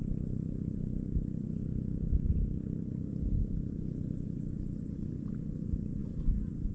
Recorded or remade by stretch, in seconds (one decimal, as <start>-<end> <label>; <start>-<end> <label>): 0.0-6.7 recorded